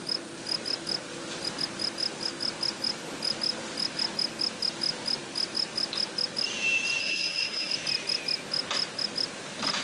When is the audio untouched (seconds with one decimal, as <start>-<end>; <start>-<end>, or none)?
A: 0.0-7.0; 7.7-9.8